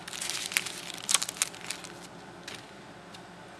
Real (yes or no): yes